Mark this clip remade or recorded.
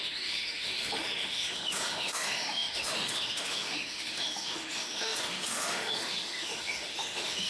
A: remade